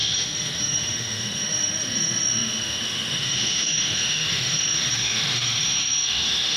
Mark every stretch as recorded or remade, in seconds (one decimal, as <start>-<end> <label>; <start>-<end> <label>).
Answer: 0.0-6.6 remade